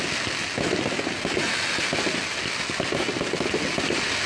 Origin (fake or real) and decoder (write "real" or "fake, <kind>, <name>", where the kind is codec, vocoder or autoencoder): real